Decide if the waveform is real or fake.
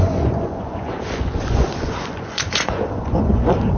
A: fake